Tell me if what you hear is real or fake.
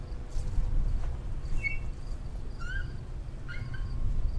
real